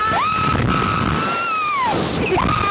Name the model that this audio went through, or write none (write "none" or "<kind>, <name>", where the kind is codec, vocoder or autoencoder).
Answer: none